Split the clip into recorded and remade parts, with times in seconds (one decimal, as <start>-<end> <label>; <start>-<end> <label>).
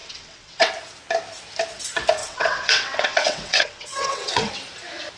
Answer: 0.0-0.7 remade; 0.7-2.2 recorded; 2.2-4.5 remade; 4.5-5.2 recorded